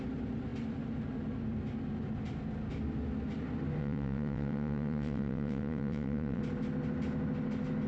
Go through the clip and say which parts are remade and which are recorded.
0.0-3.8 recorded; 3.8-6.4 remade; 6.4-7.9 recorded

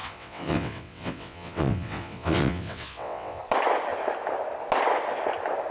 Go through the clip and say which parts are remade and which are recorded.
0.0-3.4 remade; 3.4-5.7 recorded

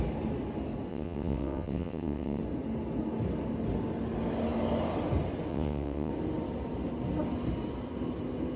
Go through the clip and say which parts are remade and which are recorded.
0.0-0.9 recorded; 0.9-2.4 remade; 2.4-5.5 recorded; 5.5-6.1 remade; 6.1-8.6 recorded